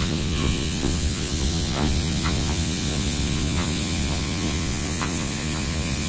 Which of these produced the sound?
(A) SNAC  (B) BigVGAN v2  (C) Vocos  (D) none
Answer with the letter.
C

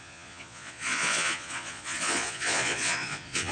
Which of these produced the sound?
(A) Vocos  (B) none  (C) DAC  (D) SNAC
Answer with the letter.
A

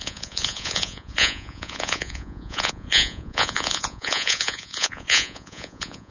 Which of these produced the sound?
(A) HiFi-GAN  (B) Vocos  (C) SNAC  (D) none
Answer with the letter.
B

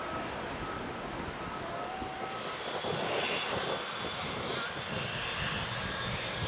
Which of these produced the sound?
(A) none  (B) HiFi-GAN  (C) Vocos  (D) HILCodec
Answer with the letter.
A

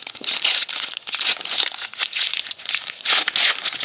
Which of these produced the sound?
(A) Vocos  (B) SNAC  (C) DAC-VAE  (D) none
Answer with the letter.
A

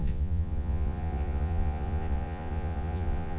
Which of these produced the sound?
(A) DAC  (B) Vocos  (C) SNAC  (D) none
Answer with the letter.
B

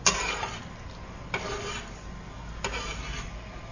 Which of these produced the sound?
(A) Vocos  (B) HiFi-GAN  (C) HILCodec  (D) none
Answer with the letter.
D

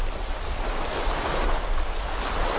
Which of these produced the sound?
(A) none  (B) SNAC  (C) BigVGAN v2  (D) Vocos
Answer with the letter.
A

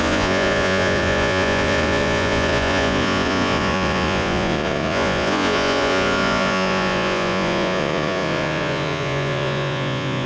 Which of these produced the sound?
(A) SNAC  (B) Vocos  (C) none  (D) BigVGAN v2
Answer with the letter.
B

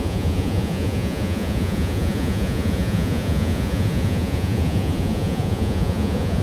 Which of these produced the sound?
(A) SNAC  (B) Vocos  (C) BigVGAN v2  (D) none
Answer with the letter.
B